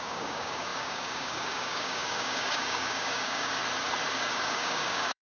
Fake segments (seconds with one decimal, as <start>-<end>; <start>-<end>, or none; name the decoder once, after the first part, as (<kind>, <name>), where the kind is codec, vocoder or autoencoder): 0.0-3.6 (codec, DAC); 4.1-5.4